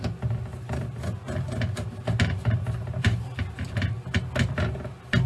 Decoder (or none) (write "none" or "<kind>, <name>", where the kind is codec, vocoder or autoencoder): none